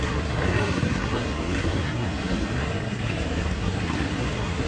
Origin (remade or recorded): remade